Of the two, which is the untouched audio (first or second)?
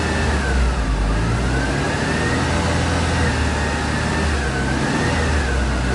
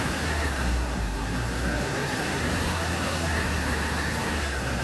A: first